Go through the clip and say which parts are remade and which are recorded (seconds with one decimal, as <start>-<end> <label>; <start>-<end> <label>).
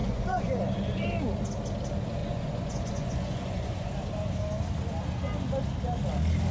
0.0-0.6 remade; 0.6-2.2 recorded; 2.2-3.9 remade; 3.9-6.5 recorded